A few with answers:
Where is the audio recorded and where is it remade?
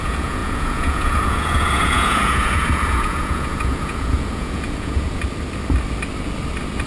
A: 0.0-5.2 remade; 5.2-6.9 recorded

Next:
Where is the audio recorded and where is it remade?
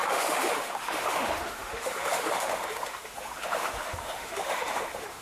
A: 0.0-5.2 remade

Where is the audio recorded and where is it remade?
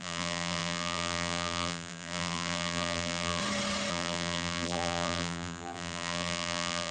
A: 0.0-3.4 remade; 3.4-3.9 recorded; 3.9-6.9 remade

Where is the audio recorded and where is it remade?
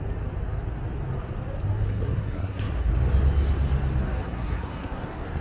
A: 0.0-1.7 recorded; 1.7-2.9 remade; 2.9-4.2 recorded; 4.2-5.4 remade